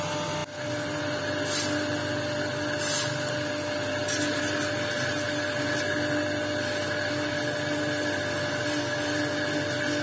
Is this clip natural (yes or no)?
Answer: yes